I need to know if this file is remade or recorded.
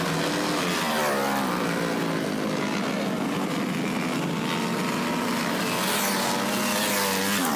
recorded